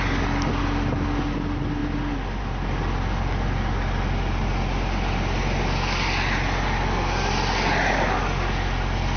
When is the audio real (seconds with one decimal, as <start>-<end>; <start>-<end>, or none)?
0.0-9.2